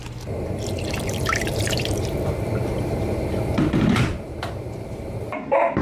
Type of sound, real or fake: fake